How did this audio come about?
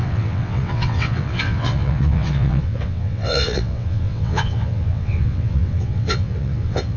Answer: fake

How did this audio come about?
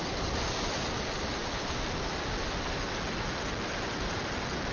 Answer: real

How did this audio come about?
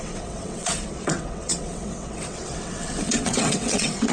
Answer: fake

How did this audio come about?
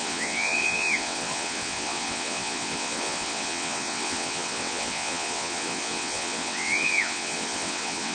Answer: fake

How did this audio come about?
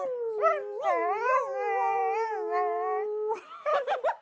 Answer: real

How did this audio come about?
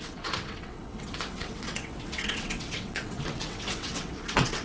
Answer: fake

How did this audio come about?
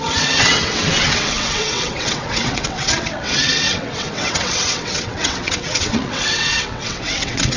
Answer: fake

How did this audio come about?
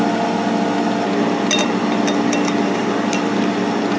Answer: real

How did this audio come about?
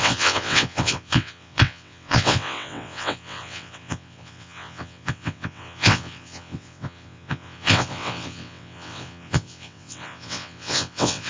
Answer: fake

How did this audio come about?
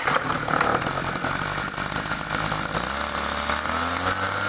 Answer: real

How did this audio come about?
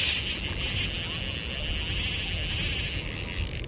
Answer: real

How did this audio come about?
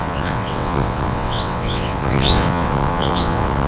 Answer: fake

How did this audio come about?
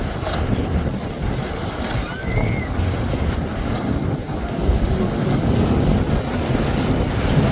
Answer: real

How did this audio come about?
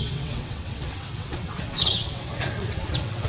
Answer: fake